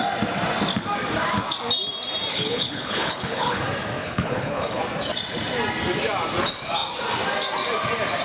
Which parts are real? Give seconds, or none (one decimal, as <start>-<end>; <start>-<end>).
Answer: 0.0-2.3; 3.6-4.0; 4.8-8.2